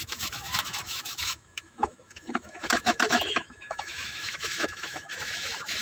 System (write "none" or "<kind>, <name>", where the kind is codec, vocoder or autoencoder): autoencoder, DAC-VAE